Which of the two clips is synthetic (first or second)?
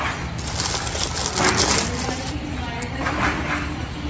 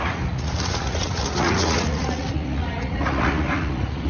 second